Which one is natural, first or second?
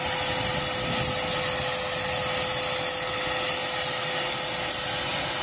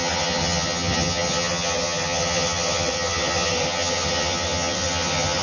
first